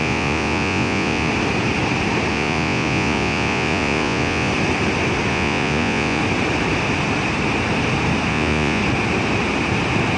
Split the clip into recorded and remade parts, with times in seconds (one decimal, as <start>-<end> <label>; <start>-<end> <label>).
0.0-1.3 remade; 1.3-2.3 recorded; 2.3-4.5 remade; 4.5-5.3 recorded; 5.3-6.2 remade; 6.2-8.3 recorded; 8.3-8.8 remade; 8.8-10.2 recorded